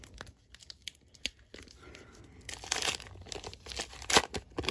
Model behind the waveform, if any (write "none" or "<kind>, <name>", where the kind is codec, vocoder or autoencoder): none